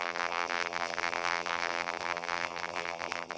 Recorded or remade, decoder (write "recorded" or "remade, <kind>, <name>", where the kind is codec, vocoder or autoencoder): remade, vocoder, BigVGAN v2